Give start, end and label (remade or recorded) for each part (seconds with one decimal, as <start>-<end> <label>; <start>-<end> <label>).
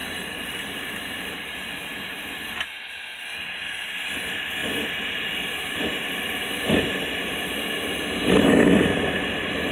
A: 0.0-3.2 remade; 3.2-9.7 recorded